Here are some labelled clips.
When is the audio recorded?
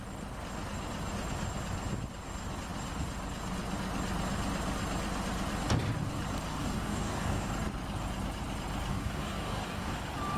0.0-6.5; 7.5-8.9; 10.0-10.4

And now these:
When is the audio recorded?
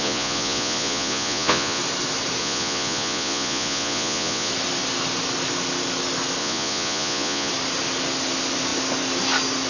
1.8-2.4; 4.5-6.4; 7.5-9.7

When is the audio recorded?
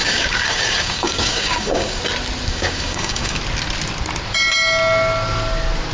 2.0-2.5; 3.4-5.9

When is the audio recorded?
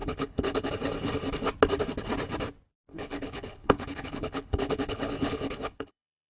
0.7-2.9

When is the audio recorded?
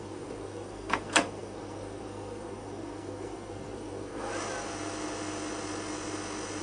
4.3-6.6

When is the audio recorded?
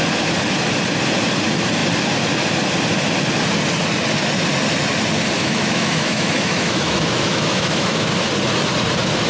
0.0-5.4; 8.1-9.3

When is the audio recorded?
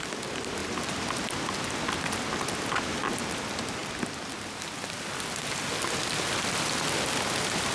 0.0-7.7